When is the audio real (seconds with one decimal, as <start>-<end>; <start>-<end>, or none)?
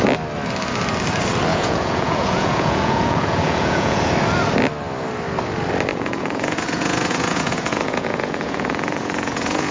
0.0-1.5; 4.0-5.9